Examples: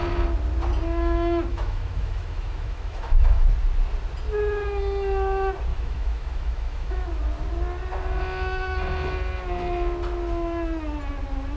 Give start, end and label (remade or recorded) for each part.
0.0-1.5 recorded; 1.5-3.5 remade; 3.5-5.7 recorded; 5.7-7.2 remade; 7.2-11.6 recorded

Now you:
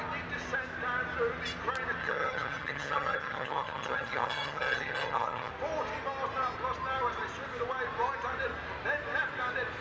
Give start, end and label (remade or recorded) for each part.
0.0-2.0 recorded; 2.0-5.5 remade; 5.5-9.8 recorded

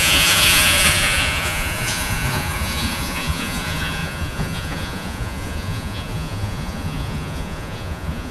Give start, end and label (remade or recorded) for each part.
0.0-8.3 remade

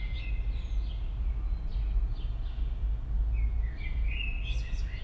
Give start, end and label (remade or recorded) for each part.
0.0-5.0 recorded

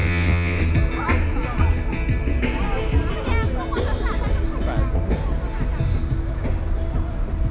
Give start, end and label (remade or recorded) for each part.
0.0-0.6 remade; 0.6-7.5 recorded

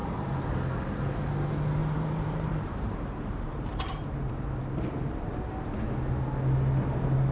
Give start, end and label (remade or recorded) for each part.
0.0-1.8 recorded; 1.8-5.3 remade; 5.3-7.3 recorded

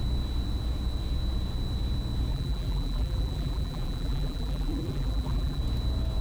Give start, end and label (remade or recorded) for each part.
0.0-2.3 recorded; 2.3-5.6 remade; 5.6-6.2 recorded